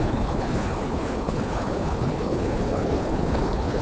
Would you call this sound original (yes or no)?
no